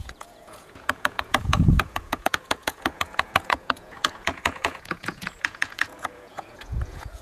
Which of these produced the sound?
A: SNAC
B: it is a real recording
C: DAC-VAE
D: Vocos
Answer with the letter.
D